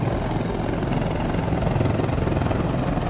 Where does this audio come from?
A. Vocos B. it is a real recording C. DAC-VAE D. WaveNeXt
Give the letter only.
B